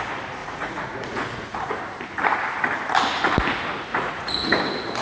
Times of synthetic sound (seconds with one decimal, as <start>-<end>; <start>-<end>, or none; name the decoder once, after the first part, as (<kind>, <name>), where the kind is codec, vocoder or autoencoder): 0.4-1.7 (vocoder, Vocos); 3.9-4.6